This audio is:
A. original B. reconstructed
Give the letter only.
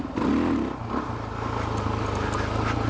A